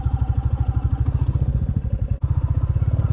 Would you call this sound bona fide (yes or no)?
yes